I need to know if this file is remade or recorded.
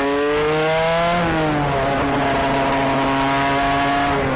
recorded